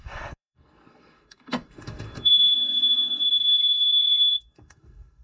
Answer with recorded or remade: remade